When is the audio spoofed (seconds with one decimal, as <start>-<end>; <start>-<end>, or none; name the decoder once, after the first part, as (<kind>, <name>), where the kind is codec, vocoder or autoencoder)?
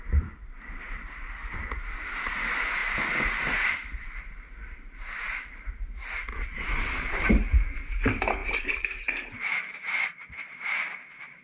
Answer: 0.0-1.4 (vocoder, BigVGAN v2); 2.0-11.4